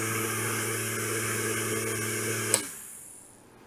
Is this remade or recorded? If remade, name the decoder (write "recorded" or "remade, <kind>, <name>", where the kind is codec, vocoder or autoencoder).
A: recorded